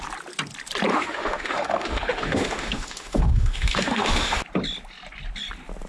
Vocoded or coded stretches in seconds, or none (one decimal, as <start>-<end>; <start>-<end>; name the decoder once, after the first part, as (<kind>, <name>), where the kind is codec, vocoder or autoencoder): 0.9-4.4 (autoencoder, DAC-VAE)